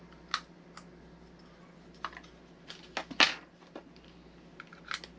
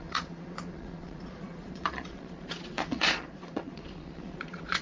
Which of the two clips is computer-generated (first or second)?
second